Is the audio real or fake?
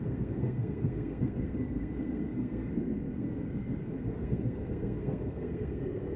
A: fake